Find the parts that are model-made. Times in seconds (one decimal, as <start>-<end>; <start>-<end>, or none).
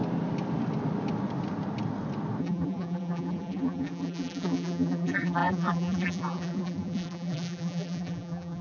2.4-8.6